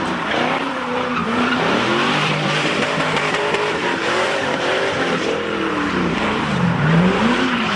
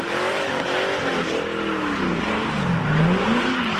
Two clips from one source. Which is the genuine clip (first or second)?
second